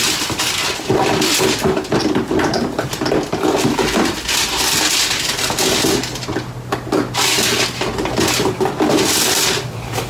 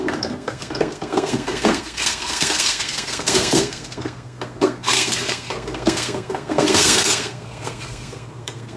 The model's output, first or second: second